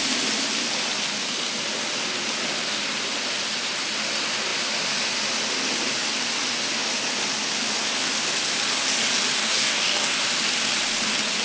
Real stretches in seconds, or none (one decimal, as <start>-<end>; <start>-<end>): 0.0-9.4; 10.2-11.4